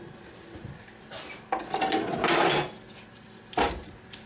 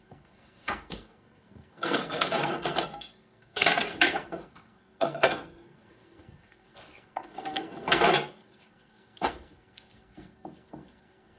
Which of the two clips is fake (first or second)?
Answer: second